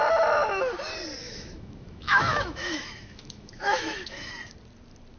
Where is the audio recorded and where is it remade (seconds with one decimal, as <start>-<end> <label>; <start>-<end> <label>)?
0.0-1.2 recorded; 1.2-4.3 remade; 4.3-5.2 recorded